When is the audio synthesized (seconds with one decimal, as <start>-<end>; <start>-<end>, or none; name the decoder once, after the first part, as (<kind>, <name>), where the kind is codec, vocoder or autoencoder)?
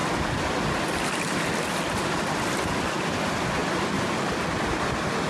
none